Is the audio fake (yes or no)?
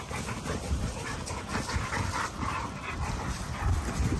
no